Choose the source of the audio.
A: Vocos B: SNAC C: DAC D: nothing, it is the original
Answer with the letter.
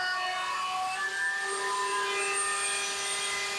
D